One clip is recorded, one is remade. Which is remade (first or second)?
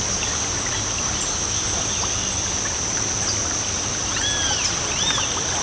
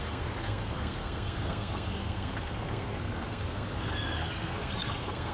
second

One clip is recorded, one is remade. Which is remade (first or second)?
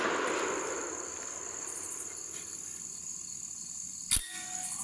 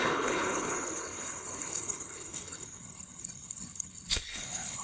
second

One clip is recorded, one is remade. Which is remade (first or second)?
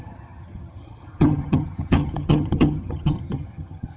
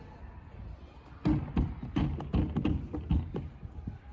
first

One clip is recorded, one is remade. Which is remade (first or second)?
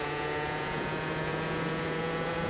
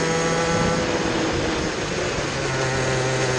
first